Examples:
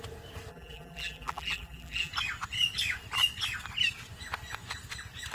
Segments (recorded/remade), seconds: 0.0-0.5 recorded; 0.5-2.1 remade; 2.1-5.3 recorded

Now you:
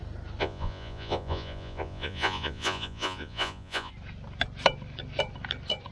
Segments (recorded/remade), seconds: 0.0-0.4 recorded; 0.4-3.9 remade; 3.9-5.9 recorded